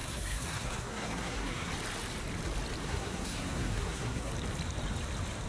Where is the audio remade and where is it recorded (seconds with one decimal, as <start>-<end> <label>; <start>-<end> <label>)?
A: 0.0-1.7 remade; 1.7-2.8 recorded; 2.8-4.3 remade; 4.3-5.5 recorded